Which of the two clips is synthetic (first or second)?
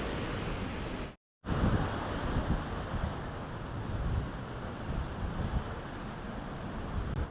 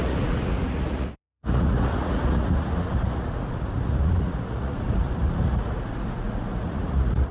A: second